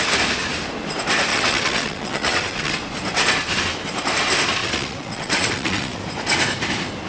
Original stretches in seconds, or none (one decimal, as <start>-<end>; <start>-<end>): 0.0-1.3; 2.8-4.6; 6.0-7.1